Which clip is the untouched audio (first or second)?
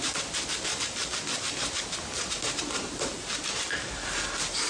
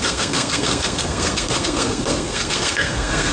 first